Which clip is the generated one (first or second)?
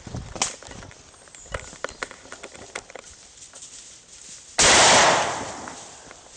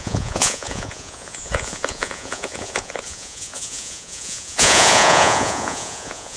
second